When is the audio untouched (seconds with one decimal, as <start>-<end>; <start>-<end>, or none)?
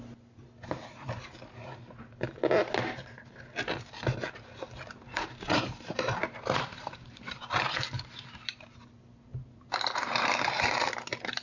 0.0-5.1; 8.6-9.3; 10.5-11.4